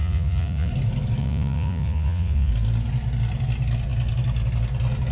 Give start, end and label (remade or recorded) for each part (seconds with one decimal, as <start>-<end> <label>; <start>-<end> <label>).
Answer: 0.0-0.7 remade; 0.7-1.2 recorded; 1.2-2.5 remade; 2.5-5.1 recorded